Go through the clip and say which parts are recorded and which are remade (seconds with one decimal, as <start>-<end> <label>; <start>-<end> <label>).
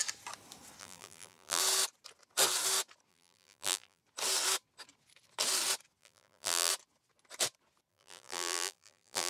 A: 0.0-0.8 recorded; 0.8-1.6 remade; 1.6-3.1 recorded; 3.1-4.0 remade; 4.0-6.0 recorded; 6.0-6.7 remade; 6.7-7.9 recorded; 7.9-9.3 remade